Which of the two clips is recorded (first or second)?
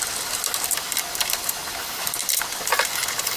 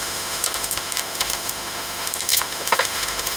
first